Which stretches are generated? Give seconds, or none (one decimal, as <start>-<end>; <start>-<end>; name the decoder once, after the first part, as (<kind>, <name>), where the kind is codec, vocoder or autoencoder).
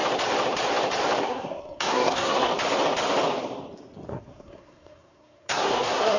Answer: 1.2-2.5 (codec, SNAC); 4.1-6.2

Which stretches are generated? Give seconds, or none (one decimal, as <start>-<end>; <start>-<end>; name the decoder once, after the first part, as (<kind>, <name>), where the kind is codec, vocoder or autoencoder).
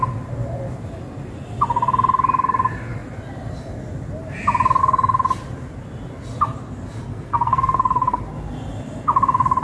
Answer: 7.1-8.2 (codec, SNAC)